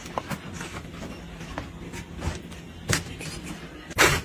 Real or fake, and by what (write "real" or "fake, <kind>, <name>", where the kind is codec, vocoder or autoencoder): real